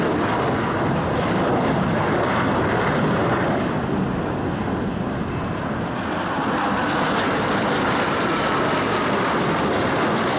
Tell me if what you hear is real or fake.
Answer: real